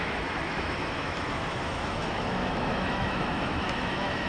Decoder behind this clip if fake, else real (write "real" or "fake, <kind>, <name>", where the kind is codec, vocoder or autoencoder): fake, autoencoder, DAC-VAE